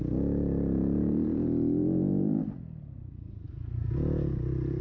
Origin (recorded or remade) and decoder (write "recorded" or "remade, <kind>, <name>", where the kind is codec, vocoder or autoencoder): recorded